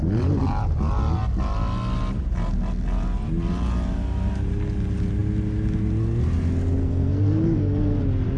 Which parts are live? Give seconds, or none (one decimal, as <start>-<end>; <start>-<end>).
0.0-6.8; 8.0-8.4